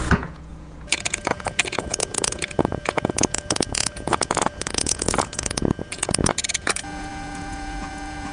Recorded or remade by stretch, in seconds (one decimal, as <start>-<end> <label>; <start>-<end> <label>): 0.0-8.3 remade